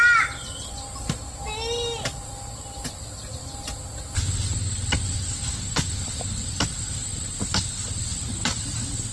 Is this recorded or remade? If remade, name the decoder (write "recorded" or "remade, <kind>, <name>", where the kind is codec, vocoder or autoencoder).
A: recorded